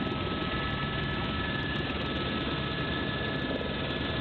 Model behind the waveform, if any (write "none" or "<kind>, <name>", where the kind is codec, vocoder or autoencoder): none